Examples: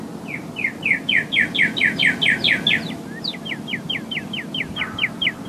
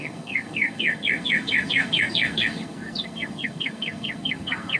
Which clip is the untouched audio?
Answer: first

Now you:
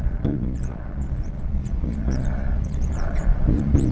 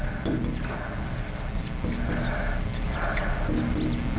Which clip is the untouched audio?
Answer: second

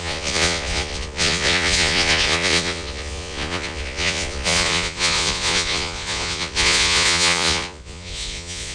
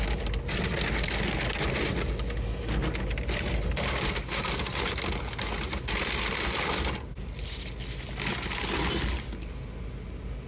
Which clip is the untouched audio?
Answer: second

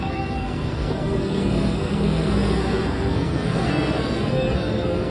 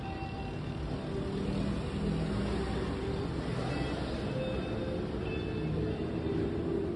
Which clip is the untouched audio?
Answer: second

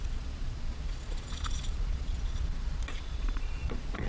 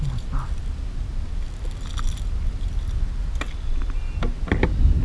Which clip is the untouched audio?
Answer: second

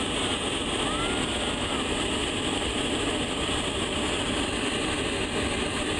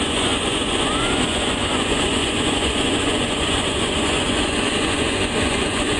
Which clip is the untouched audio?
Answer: first